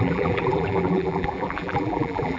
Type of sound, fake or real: fake